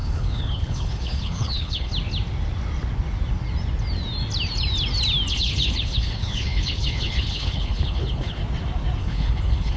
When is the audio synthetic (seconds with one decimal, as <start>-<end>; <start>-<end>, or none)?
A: 0.0-1.9; 5.3-8.4; 9.0-9.8